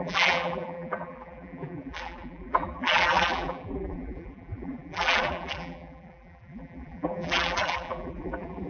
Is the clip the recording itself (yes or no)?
no